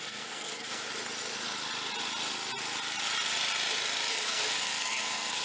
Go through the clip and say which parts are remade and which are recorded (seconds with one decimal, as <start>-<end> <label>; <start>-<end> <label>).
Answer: 0.0-0.9 remade; 0.9-4.1 recorded; 4.1-5.4 remade

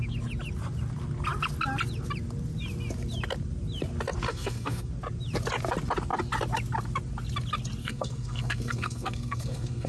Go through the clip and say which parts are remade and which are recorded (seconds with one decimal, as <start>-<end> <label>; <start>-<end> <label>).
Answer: 0.0-4.3 recorded; 4.3-4.9 remade; 4.9-7.8 recorded; 7.8-9.9 remade

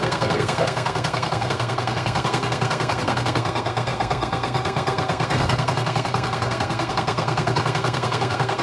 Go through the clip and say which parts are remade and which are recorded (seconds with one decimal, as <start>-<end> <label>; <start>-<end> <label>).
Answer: 0.0-8.6 remade

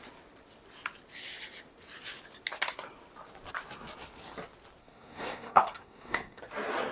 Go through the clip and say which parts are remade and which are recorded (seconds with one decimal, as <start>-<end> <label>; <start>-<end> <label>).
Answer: 0.0-4.8 recorded; 4.8-6.4 remade; 6.4-6.9 recorded

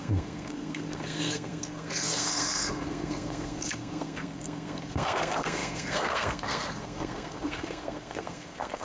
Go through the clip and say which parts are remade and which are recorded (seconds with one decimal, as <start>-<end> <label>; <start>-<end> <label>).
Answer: 0.0-8.8 remade

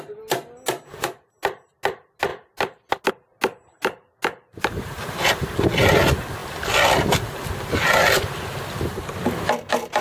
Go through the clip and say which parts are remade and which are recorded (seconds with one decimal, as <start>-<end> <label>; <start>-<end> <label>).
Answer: 0.0-10.0 recorded

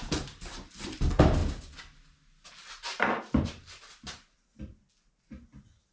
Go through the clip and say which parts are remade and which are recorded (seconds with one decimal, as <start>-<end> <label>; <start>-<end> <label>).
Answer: 0.0-5.9 recorded

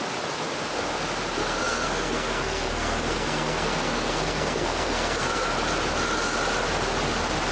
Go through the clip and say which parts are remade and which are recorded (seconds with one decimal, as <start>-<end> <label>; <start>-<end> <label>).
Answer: 0.0-1.4 recorded; 1.4-5.5 remade; 5.5-7.5 recorded